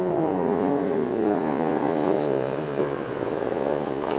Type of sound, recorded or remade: remade